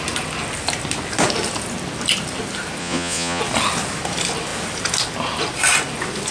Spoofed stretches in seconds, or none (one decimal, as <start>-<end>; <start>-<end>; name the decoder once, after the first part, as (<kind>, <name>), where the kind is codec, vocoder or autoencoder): 2.8-3.4 (vocoder, Vocos)